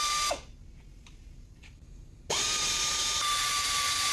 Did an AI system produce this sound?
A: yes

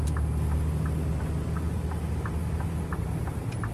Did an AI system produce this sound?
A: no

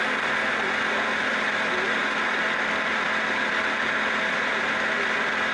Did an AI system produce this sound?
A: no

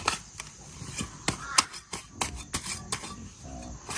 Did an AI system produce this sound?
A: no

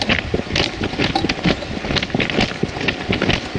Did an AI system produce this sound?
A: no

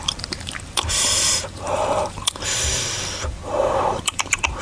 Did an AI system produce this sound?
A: yes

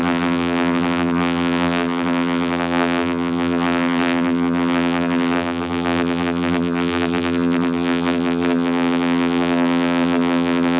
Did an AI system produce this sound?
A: yes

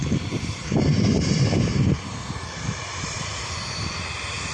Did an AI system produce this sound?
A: yes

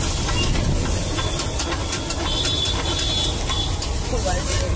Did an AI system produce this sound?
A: no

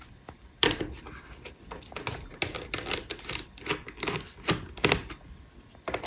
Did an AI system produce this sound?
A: no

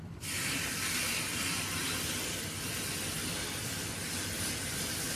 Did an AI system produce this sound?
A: yes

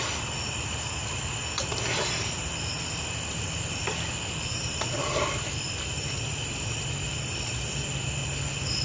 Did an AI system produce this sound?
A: yes